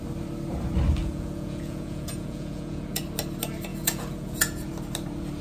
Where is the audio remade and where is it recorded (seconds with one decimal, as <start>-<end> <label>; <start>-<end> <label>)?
0.0-1.0 recorded; 1.0-3.0 remade; 3.0-3.7 recorded; 3.7-4.7 remade; 4.7-5.4 recorded